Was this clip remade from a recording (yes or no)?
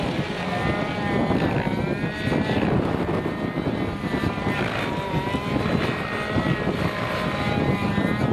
no